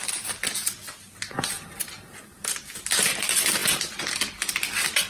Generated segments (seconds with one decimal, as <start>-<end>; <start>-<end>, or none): none